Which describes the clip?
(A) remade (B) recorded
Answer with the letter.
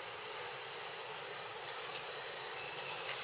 B